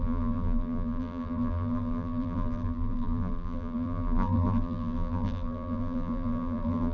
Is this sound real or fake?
fake